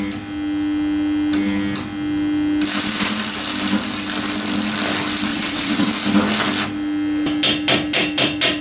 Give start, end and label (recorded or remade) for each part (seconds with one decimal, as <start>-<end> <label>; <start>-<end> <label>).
0.0-5.3 recorded; 5.3-5.9 remade; 5.9-8.6 recorded